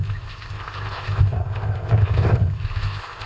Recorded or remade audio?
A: remade